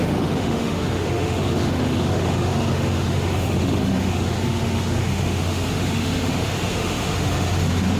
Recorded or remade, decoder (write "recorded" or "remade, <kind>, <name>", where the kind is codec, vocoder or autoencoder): remade, autoencoder, DAC-VAE